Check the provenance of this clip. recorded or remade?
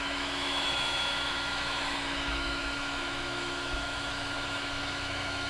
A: remade